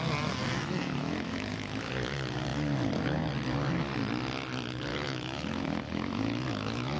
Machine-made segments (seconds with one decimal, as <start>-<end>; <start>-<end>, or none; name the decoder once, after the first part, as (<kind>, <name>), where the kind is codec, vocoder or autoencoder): 0.4-1.9 (autoencoder, DAC-VAE); 4.9-7.0